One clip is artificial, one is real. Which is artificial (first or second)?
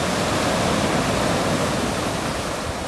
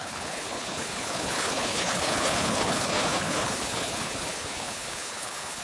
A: second